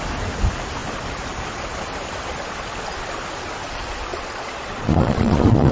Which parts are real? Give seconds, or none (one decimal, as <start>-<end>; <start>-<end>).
0.0-4.1